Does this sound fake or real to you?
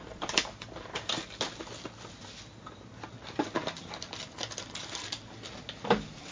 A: real